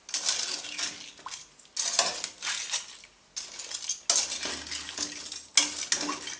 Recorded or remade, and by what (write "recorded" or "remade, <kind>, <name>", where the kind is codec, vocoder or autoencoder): recorded